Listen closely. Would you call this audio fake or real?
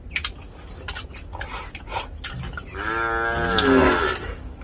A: real